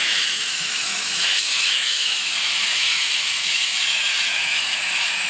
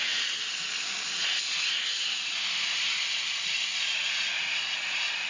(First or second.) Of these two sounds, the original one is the second